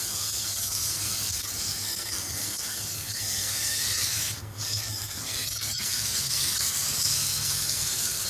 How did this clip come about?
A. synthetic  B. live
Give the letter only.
A